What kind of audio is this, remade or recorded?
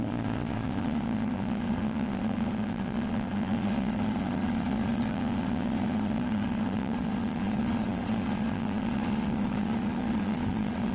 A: remade